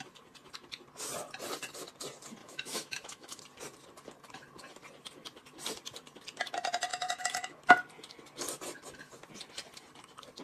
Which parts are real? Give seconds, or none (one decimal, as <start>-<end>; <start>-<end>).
0.0-2.4; 3.4-6.9; 7.6-10.4